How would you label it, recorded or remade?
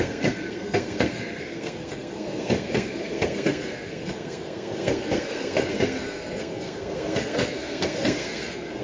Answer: remade